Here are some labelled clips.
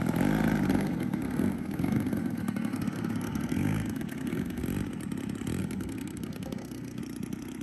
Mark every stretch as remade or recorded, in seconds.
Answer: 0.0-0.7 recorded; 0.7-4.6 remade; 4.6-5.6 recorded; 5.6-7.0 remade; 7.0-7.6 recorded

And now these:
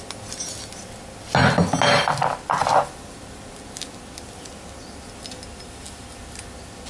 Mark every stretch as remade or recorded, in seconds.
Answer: 0.0-6.9 recorded

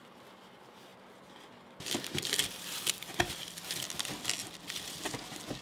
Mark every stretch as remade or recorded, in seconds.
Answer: 0.0-5.6 recorded

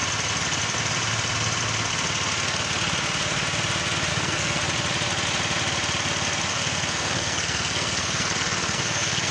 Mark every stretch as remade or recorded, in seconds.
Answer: 0.0-4.1 recorded; 4.1-4.6 remade; 4.6-6.5 recorded; 6.5-9.3 remade

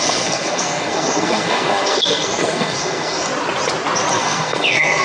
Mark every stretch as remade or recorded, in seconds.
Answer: 0.0-3.3 remade; 3.3-4.1 recorded; 4.1-5.0 remade